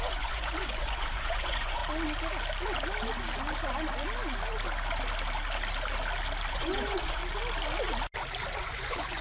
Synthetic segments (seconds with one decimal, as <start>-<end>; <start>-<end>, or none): 0.0-1.8; 6.5-7.2; 8.6-9.2